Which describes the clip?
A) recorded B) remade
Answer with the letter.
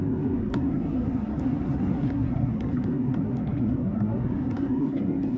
B